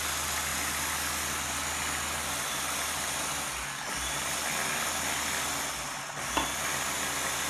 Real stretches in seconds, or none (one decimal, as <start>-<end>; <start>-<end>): 0.0-7.5